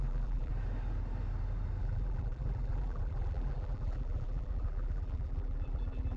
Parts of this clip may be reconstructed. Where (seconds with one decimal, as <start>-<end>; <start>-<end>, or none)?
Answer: 0.0-0.5; 1.8-6.2